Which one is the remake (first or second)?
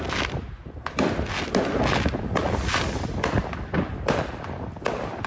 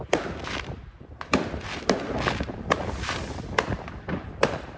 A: second